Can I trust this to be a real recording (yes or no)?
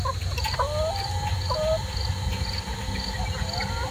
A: yes